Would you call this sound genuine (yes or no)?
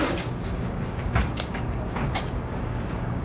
no